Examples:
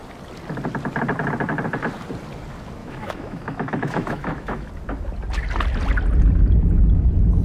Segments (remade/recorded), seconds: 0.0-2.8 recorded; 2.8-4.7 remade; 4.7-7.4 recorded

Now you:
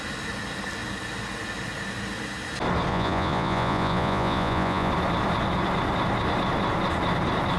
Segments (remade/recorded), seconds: 0.0-2.9 recorded; 2.9-4.9 remade; 4.9-7.6 recorded